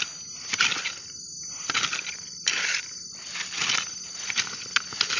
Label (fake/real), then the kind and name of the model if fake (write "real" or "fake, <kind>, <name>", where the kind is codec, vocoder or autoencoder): real